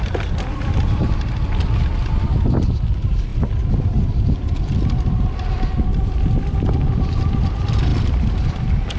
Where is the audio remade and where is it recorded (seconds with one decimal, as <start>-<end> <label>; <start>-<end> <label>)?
0.0-9.0 recorded